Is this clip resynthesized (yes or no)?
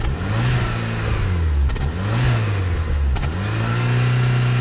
no